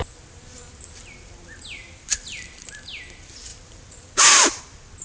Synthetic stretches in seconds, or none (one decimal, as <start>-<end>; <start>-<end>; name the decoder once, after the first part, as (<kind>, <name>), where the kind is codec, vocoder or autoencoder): none